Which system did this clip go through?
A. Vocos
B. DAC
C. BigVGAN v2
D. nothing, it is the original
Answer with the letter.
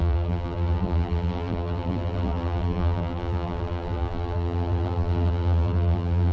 C